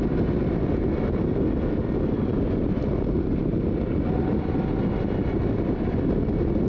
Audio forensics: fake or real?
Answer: real